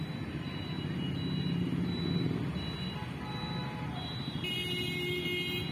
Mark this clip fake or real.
real